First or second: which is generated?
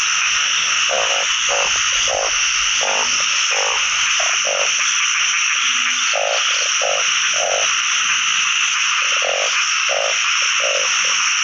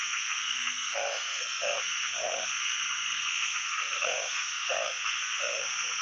second